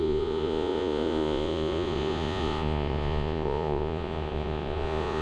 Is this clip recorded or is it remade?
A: remade